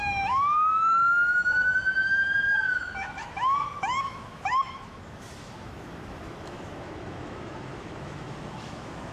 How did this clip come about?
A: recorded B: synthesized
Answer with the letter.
B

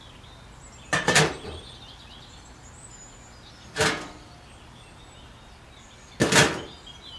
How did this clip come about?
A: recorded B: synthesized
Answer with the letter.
A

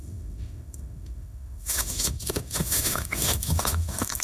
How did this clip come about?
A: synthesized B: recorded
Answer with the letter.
A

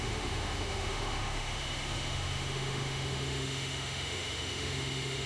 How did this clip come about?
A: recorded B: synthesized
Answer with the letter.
B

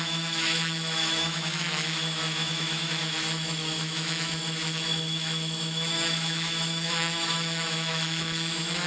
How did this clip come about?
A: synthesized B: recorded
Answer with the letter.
A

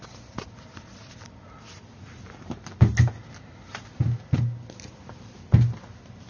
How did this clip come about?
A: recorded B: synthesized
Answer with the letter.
A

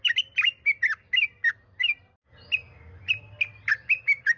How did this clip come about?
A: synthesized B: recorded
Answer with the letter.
B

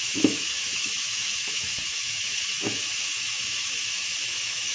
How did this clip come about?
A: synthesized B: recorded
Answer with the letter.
A